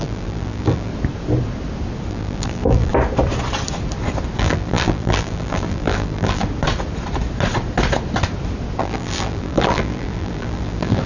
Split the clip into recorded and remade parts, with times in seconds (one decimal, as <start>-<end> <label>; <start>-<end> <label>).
0.0-0.9 remade; 0.9-2.1 recorded; 2.1-2.9 remade; 2.9-4.4 recorded; 4.4-6.4 remade; 6.4-8.8 recorded; 8.8-11.1 remade